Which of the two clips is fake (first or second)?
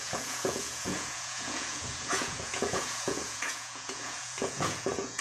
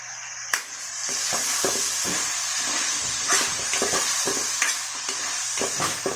first